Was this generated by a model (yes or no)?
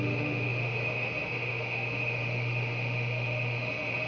yes